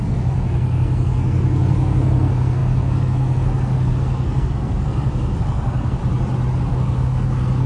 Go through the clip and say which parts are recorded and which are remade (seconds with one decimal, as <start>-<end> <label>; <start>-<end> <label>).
0.0-6.0 remade; 6.0-6.7 recorded; 6.7-7.7 remade